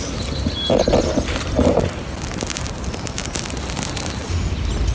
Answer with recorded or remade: recorded